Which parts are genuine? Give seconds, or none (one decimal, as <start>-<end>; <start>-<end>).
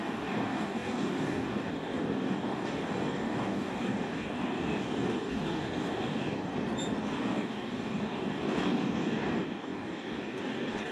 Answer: 6.5-7.0